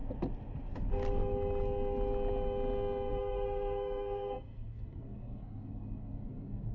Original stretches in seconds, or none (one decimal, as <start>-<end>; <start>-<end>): 0.0-3.1